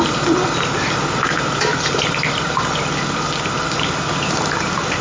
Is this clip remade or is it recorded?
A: recorded